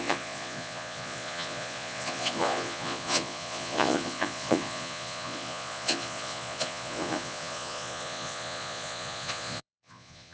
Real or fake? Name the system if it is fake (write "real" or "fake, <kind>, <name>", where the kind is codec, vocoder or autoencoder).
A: fake, vocoder, Vocos